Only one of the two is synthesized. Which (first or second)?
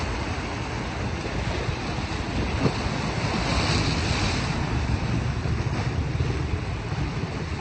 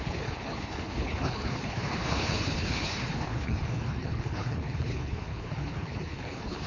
second